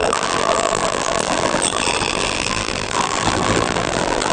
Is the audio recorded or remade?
remade